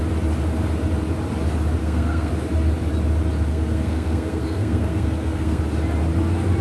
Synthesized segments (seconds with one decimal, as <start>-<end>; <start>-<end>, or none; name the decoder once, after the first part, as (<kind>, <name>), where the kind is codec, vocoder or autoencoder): 1.8-2.3 (codec, SNAC); 3.5-5.6